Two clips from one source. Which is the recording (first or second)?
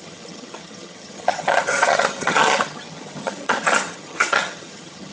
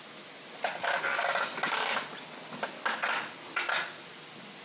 second